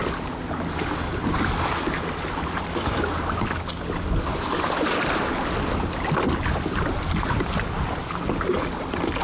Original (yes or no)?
yes